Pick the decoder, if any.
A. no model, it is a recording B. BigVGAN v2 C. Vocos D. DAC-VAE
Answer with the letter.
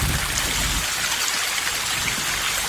A